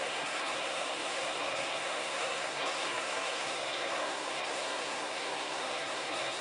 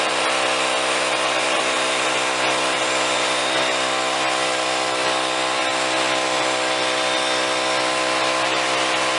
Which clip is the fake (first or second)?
first